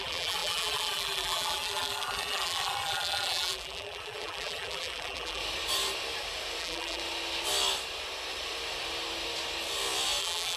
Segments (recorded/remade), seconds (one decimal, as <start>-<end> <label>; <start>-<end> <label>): 0.0-5.4 remade; 5.4-6.6 recorded; 6.6-7.0 remade; 7.0-10.2 recorded; 10.2-10.6 remade